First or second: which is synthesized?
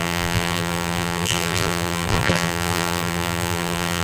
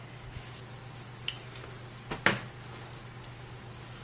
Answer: first